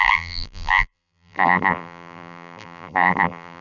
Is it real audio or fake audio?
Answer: fake